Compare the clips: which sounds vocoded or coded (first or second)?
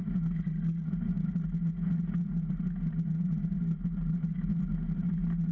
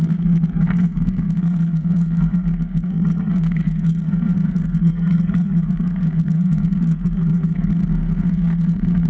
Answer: second